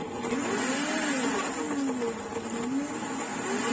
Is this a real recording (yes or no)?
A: yes